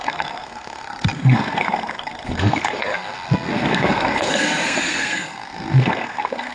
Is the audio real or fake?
fake